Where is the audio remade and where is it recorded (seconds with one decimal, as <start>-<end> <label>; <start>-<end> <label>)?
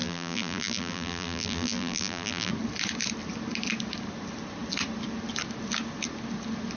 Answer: 0.0-2.5 remade; 2.5-6.8 recorded